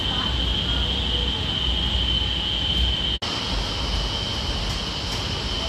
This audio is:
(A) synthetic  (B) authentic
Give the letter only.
B